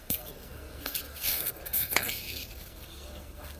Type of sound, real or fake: fake